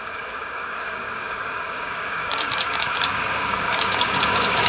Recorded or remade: remade